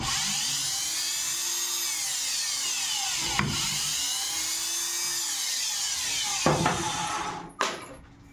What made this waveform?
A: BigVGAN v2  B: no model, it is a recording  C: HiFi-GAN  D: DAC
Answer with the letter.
B